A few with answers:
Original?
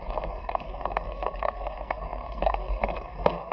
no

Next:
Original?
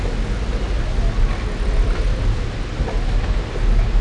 yes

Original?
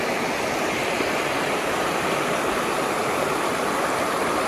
no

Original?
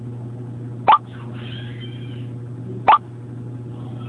yes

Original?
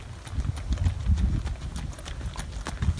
yes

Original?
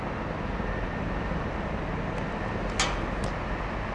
yes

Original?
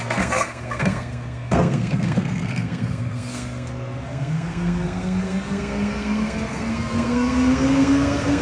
no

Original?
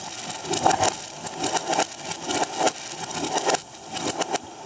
yes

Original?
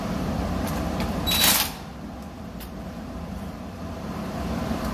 no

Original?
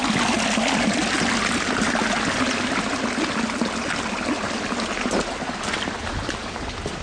yes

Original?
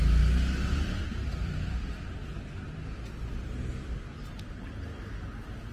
yes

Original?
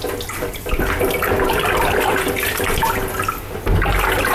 yes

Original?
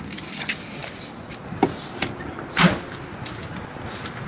yes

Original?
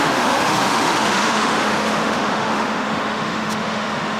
no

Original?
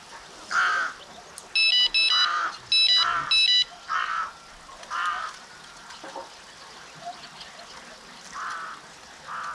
yes